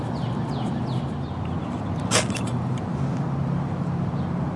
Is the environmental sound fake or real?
real